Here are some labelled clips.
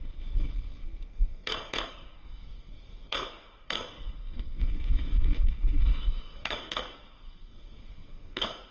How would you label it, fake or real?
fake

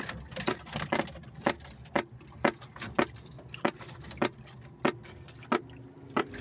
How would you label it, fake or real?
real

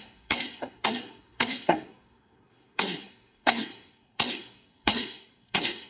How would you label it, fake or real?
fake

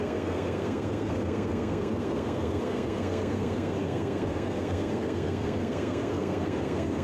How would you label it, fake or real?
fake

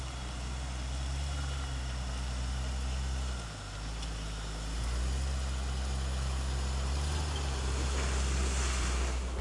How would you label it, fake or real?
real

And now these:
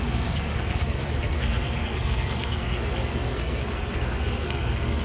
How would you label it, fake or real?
fake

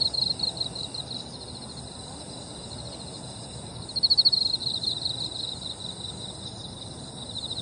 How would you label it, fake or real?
real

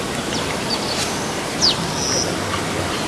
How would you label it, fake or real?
real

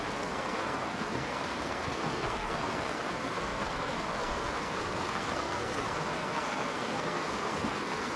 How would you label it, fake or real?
fake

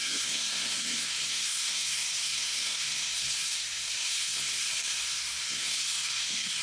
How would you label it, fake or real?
fake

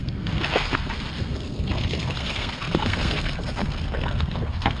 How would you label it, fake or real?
fake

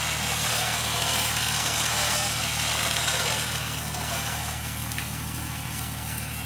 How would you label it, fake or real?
fake